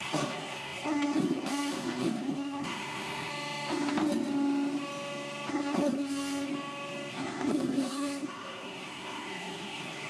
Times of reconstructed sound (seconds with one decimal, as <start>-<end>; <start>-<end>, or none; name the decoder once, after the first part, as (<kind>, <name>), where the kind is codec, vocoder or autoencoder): 0.0-3.3 (codec, SNAC); 5.5-6.5; 7.1-10.1